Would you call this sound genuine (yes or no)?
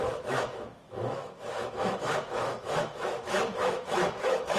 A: no